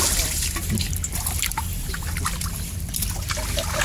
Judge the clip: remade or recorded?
recorded